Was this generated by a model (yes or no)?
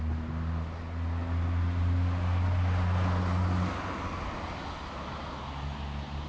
no